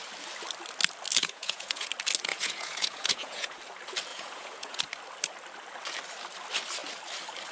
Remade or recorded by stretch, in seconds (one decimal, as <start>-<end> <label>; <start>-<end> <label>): 0.0-1.2 recorded; 1.2-1.9 remade; 1.9-2.3 recorded; 2.3-3.6 remade; 3.6-4.1 recorded; 4.1-4.8 remade; 4.8-7.5 recorded